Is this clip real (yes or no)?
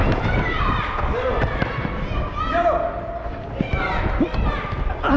yes